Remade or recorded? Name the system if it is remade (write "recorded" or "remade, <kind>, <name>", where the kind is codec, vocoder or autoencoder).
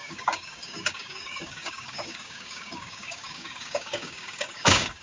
remade, codec, DAC